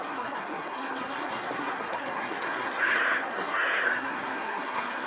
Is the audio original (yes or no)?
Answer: no